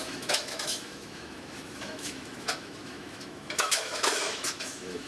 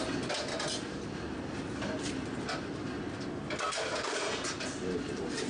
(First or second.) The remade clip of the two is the first